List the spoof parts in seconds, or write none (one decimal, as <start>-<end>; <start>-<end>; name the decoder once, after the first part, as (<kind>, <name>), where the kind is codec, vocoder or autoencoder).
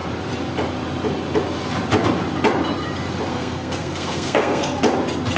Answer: 3.3-4.8 (codec, SNAC)